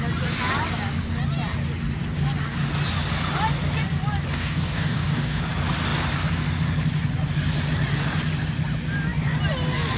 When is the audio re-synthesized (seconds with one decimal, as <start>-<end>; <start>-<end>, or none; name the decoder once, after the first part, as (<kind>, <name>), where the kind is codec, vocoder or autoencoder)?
4.3-5.4 (codec, DAC)